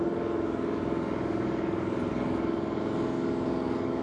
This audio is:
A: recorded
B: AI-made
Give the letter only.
B